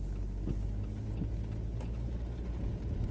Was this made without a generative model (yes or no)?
yes